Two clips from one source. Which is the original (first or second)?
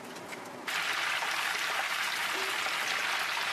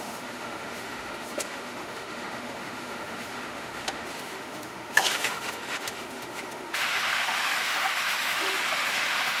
first